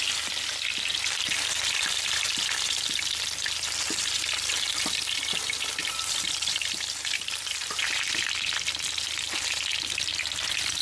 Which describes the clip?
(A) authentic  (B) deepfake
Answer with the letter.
B